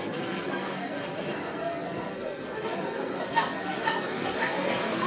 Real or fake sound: fake